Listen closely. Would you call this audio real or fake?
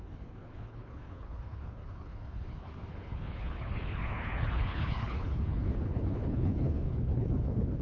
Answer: fake